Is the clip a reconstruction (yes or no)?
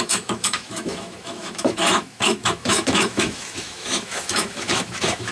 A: yes